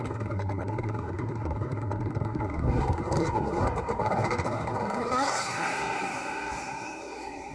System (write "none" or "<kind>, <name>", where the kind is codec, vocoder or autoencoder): codec, SNAC